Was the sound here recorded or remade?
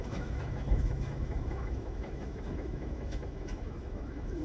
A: remade